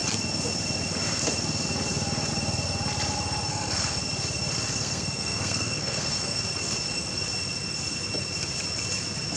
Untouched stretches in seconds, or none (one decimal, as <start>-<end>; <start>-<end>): 0.0-3.5; 4.0-4.7; 6.4-9.4